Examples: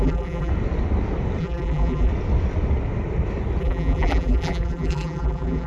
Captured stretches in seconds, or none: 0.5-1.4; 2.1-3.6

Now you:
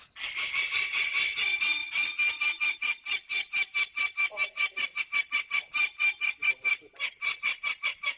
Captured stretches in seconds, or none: 0.0-1.8; 5.0-8.2

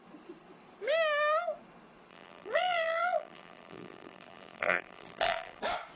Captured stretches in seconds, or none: 0.0-2.1; 5.6-6.0

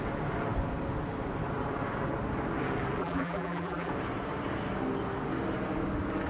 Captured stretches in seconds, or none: 0.0-3.0; 3.9-6.3

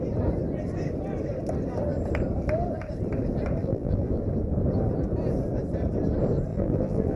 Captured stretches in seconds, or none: 0.0-3.6; 4.2-6.5

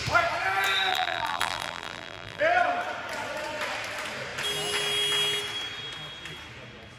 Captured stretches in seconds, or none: 0.0-0.9; 2.4-7.0

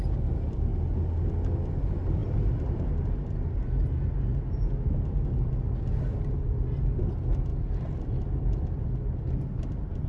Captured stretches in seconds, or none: 0.0-10.1